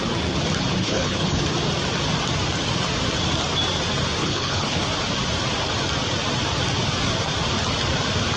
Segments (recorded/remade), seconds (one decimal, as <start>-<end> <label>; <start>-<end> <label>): 0.0-0.8 recorded; 0.8-1.4 remade; 1.4-4.2 recorded; 4.2-4.8 remade; 4.8-8.4 recorded